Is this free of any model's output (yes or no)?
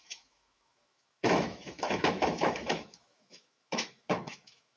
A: no